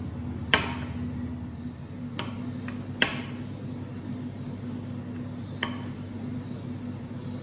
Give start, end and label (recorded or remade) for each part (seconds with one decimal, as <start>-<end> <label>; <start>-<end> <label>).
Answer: 0.0-7.4 recorded